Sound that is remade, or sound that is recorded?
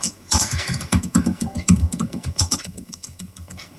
remade